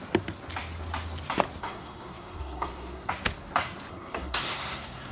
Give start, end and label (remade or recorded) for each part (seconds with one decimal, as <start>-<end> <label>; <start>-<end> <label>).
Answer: 0.0-1.6 recorded; 1.6-3.1 remade; 3.1-3.9 recorded; 3.9-5.1 remade